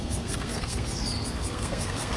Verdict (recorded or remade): remade